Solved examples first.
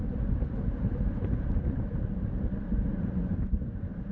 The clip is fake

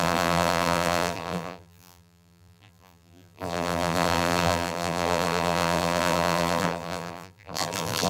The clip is fake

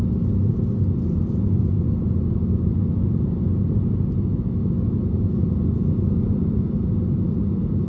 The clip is real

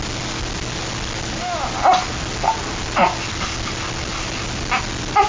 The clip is real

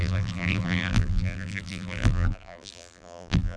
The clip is fake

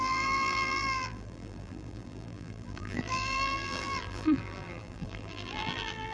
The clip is fake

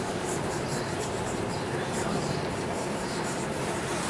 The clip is fake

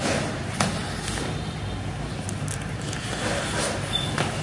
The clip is real